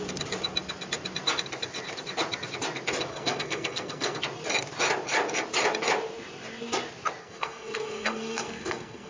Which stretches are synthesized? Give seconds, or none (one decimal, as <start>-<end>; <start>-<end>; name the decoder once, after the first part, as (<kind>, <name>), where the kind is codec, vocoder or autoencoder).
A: 3.1-4.2 (codec, SNAC); 7.2-9.1